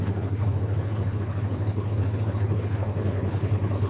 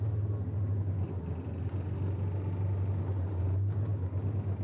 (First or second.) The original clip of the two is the second